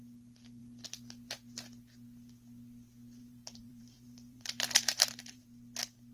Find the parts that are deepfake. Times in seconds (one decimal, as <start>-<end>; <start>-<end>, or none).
3.2-5.4